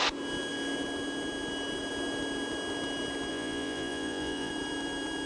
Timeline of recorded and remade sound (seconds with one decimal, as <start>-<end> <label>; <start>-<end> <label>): 0.0-3.3 recorded; 3.3-4.5 remade; 4.5-5.3 recorded